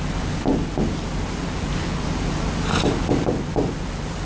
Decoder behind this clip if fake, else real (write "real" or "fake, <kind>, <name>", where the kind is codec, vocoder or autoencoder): real